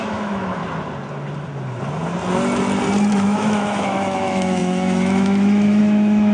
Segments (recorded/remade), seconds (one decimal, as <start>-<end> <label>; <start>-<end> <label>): 0.0-0.6 remade; 0.6-3.1 recorded; 3.1-6.3 remade